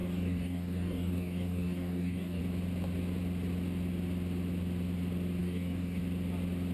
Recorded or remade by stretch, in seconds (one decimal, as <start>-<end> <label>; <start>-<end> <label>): 0.0-2.4 remade; 2.4-5.4 recorded; 5.4-6.0 remade; 6.0-6.7 recorded